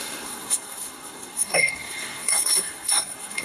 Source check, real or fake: fake